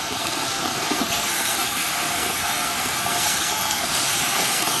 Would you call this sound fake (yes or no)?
yes